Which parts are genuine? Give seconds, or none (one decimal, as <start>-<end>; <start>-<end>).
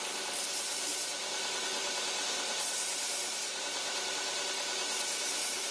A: 0.0-5.7